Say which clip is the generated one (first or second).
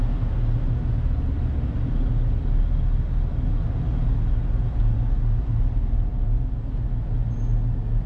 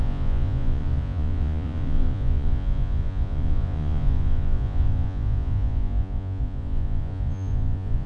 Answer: second